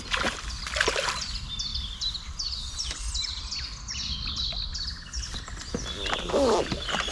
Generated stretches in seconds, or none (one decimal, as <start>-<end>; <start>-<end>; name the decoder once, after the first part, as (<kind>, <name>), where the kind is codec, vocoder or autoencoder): none